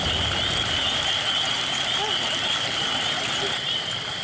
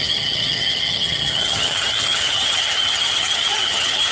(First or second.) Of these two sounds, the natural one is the first